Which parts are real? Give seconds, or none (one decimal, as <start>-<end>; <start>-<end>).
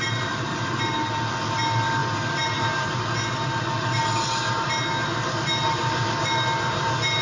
0.0-7.2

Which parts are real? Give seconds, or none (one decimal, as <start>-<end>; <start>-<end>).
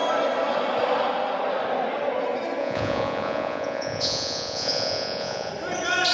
0.0-2.6; 5.5-6.1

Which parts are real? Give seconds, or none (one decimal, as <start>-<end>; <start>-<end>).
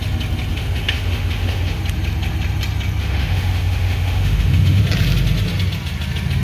0.0-0.5; 1.8-3.0; 4.8-6.4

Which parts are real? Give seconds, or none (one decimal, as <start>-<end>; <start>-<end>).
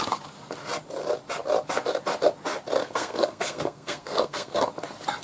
0.0-2.8; 4.7-5.2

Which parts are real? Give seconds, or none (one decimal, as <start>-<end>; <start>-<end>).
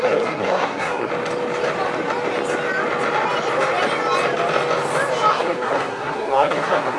1.1-5.3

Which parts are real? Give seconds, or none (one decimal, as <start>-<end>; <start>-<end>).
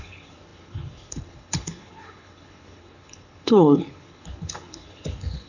none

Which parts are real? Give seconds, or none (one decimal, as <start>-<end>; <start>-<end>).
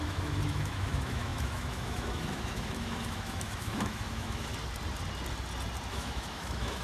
4.5-5.9